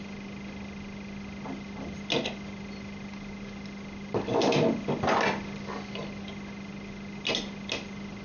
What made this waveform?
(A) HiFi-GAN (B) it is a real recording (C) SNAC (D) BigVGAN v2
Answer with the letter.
B